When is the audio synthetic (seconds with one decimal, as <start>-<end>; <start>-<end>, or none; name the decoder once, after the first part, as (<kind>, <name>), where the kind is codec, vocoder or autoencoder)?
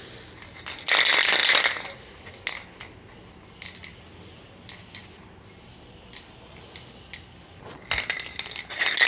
none